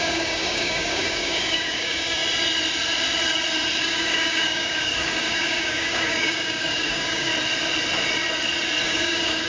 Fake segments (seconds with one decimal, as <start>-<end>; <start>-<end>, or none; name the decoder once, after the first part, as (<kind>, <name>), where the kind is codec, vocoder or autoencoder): 0.0-2.2 (codec, DAC); 3.8-7.3; 8.8-9.5